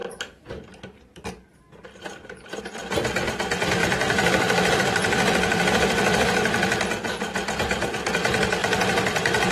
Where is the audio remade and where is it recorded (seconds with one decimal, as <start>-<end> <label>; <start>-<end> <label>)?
0.0-2.6 remade; 2.6-3.8 recorded; 3.8-8.1 remade; 8.1-8.6 recorded; 8.6-9.5 remade